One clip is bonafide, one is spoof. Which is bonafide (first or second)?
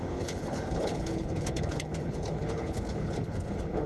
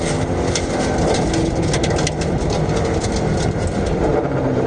second